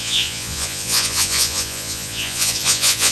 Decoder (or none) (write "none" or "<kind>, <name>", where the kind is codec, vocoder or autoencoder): vocoder, Vocos